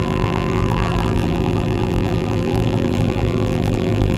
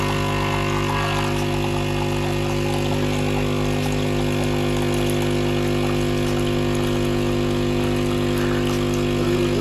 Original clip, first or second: second